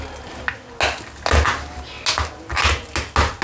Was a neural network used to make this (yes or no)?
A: no